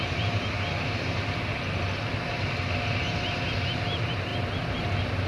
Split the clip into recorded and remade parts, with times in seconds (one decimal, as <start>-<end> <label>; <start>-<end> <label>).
0.0-5.3 recorded